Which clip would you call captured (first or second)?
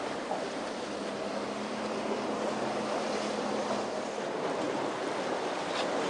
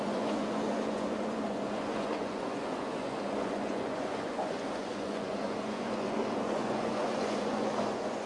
first